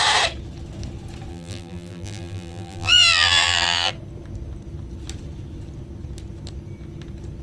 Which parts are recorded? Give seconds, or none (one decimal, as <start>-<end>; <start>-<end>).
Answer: 0.0-1.3; 3.9-7.4